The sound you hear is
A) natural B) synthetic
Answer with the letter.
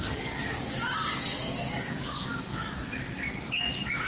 A